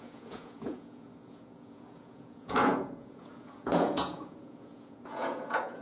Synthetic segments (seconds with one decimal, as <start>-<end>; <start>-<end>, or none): 0.0-5.8